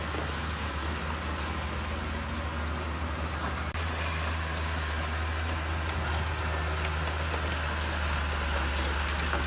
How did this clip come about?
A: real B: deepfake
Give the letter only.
A